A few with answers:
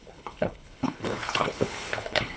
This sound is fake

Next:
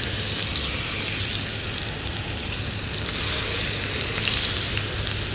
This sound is real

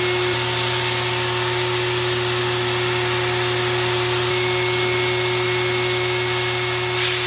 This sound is real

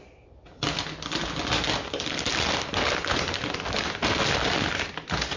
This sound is real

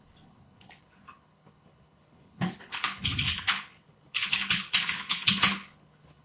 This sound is fake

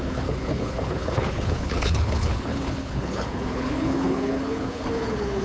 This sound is fake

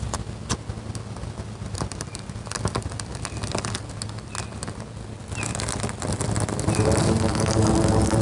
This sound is real